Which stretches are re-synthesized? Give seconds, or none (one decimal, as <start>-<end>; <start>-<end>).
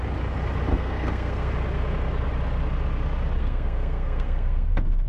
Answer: 0.7-1.5; 3.4-5.1